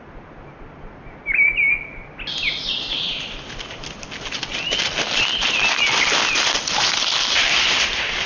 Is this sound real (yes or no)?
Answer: yes